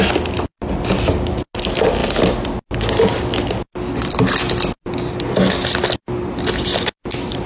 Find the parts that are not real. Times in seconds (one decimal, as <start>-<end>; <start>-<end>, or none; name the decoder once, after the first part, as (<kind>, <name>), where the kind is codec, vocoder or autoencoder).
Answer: none